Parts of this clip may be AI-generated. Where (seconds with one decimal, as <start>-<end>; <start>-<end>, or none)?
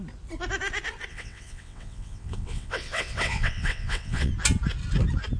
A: 1.1-4.3